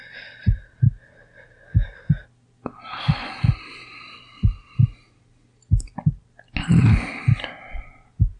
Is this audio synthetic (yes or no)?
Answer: no